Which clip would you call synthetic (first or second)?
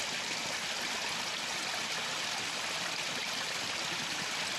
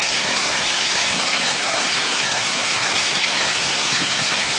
second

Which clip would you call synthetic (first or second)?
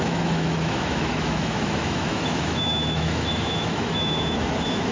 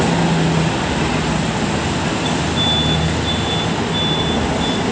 first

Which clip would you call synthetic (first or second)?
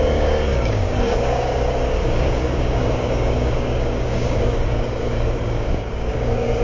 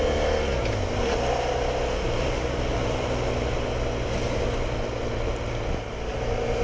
first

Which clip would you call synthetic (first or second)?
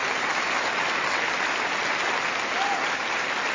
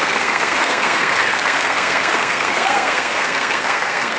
second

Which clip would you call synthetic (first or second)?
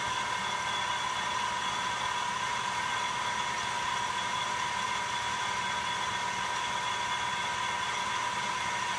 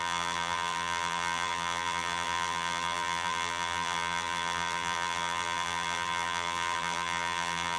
second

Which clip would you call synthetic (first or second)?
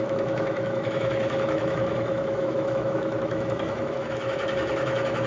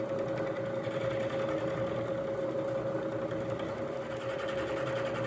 first